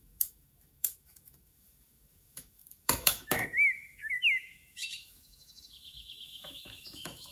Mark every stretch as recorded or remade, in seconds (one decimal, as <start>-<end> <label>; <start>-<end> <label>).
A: 0.0-7.3 remade